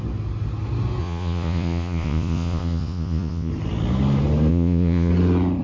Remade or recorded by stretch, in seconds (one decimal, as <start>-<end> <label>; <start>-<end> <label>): 0.0-1.0 recorded; 1.0-3.5 remade; 3.5-4.5 recorded; 4.5-5.1 remade; 5.1-5.6 recorded